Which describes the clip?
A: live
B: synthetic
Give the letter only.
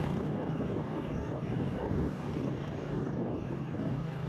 B